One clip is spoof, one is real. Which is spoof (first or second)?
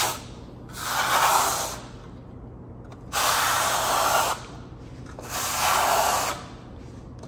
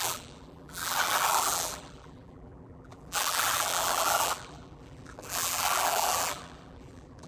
second